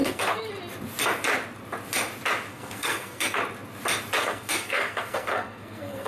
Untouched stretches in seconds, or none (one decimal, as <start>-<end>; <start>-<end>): 0.5-2.5; 3.4-4.2